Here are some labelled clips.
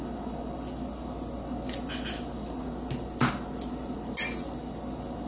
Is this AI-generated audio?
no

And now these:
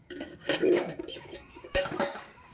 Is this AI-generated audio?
yes